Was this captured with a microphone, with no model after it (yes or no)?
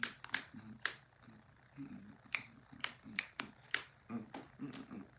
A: no